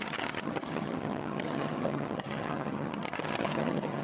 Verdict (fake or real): fake